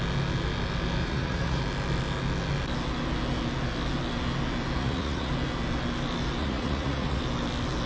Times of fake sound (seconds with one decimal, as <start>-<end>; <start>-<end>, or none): 1.0-1.6; 4.8-5.3; 6.4-7.2